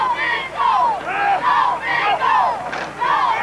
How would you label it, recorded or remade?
recorded